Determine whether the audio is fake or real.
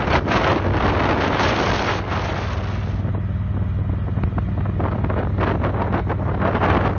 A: real